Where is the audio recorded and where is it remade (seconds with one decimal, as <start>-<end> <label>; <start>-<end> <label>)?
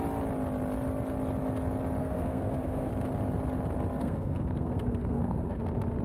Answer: 0.0-2.0 recorded; 2.0-2.9 remade; 2.9-4.0 recorded; 4.0-5.6 remade; 5.6-6.0 recorded